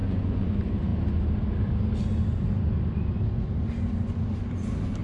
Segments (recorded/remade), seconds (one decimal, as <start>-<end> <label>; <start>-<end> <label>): 0.0-0.5 remade; 0.5-5.0 recorded